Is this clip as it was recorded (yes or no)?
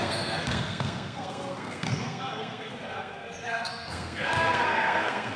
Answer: no